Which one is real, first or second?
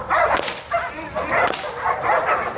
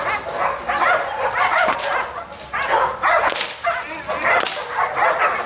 second